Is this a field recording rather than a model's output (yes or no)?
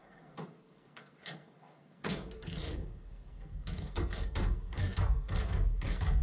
no